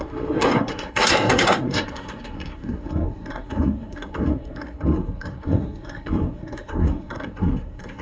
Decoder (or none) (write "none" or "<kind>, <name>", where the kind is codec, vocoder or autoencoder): codec, SNAC